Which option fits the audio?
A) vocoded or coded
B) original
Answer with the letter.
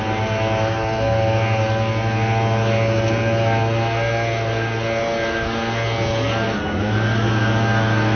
B